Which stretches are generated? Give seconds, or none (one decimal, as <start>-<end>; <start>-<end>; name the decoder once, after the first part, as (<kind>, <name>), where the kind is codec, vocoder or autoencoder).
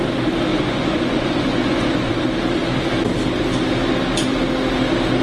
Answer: 0.5-2.1 (vocoder, Vocos)